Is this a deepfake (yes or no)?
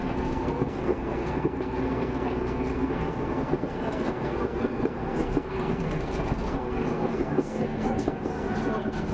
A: yes